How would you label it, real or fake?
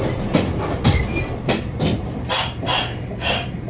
fake